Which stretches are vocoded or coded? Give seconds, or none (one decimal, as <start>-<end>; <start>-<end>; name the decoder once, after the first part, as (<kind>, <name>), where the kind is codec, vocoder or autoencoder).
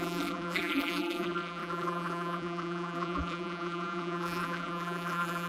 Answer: 0.0-5.5 (vocoder, BigVGAN v2)